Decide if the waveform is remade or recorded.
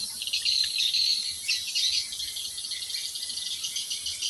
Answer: recorded